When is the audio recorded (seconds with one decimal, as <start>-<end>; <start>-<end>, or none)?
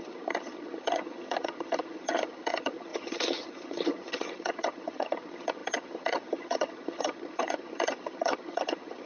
none